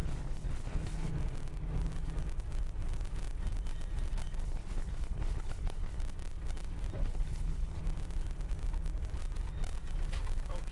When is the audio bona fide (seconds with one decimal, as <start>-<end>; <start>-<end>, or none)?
1.1-4.4; 6.0-7.0; 7.8-10.7